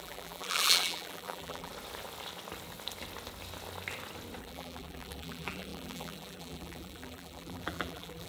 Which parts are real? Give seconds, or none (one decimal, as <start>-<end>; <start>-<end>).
1.7-4.4